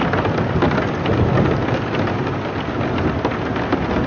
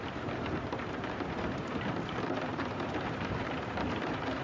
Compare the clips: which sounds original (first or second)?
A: first